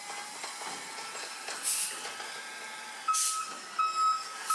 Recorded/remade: recorded